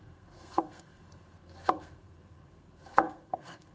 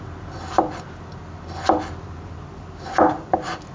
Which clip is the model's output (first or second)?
first